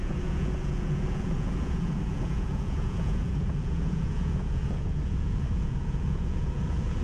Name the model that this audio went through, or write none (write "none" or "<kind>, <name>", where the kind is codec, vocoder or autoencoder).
vocoder, Vocos